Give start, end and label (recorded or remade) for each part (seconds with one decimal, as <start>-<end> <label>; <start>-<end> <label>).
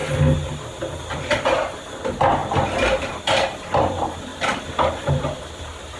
0.0-1.0 recorded; 1.0-2.4 remade; 2.4-3.0 recorded; 3.0-4.3 remade; 4.3-4.9 recorded; 4.9-6.0 remade